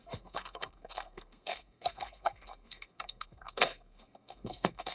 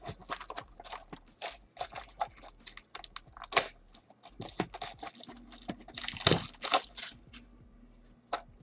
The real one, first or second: second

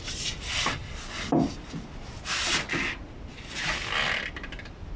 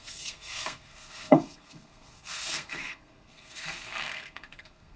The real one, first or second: first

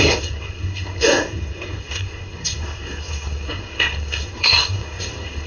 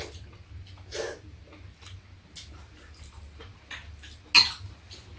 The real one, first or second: second